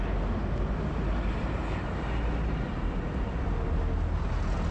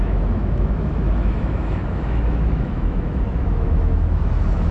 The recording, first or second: first